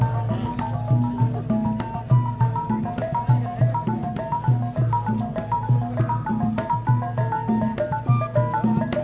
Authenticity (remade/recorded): recorded